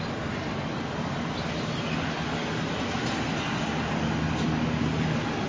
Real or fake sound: real